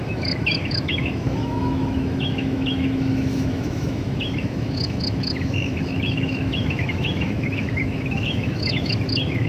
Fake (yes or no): yes